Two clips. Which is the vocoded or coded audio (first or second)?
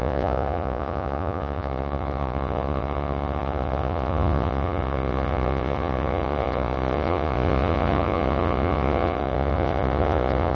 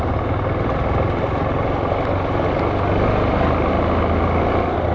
first